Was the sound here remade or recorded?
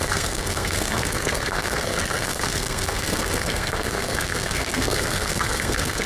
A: remade